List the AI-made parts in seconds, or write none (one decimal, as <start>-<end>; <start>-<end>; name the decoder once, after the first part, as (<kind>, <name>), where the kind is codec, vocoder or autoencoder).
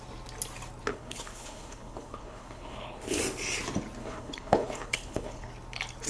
0.9-3.2 (codec, HILCodec); 4.0-5.5